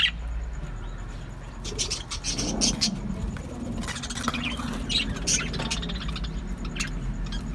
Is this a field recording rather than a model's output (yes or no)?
yes